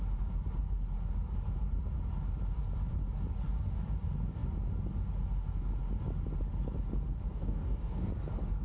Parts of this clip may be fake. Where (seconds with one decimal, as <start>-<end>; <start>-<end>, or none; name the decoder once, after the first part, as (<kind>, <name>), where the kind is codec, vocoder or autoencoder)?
7.3-8.1 (codec, DAC)